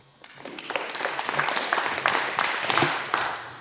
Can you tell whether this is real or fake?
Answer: fake